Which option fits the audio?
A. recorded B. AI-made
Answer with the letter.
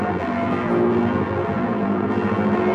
B